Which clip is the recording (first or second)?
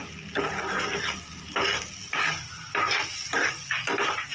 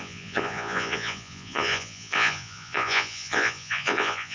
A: first